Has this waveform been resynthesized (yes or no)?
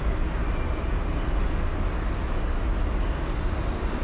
no